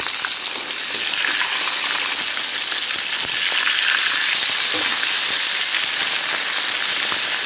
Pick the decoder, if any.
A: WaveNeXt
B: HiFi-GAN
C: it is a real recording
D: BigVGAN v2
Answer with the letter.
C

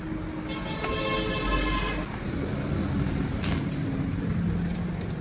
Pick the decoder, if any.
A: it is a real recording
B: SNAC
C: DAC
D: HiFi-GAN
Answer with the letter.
A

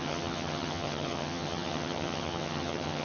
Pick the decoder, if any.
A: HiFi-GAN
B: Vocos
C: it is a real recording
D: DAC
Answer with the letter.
A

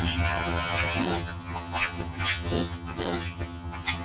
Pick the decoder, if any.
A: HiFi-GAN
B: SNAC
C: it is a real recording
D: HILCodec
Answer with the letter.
A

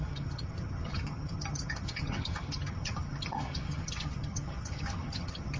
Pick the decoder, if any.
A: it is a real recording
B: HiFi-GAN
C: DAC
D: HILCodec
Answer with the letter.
B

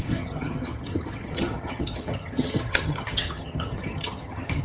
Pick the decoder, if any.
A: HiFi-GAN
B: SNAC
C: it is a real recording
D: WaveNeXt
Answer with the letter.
A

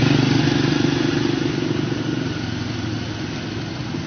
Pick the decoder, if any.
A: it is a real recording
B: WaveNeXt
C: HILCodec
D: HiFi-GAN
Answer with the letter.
A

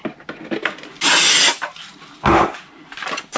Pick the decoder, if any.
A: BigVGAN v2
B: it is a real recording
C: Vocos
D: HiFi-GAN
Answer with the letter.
B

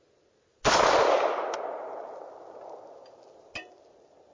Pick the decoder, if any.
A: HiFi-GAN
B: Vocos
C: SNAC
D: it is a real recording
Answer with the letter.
D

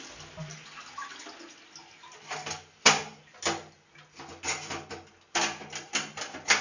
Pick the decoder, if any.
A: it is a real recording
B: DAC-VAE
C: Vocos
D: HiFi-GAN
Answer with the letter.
A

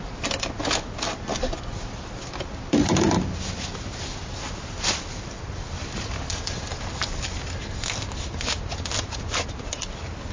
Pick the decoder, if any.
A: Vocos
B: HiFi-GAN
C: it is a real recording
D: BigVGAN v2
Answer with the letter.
C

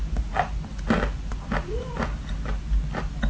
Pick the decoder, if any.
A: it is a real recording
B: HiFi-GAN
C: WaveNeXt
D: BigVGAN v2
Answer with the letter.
A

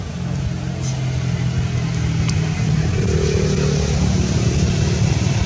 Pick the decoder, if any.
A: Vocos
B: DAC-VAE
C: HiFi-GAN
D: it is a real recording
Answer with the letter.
D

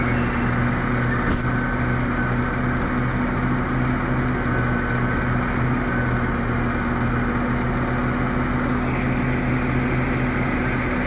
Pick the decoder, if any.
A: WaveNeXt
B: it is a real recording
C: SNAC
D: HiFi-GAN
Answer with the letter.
B